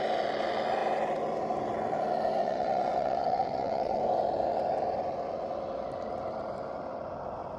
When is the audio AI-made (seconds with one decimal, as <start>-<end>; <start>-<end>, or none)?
2.4-4.0